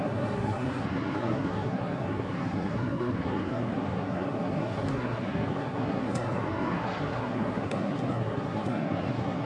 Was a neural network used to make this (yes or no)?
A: yes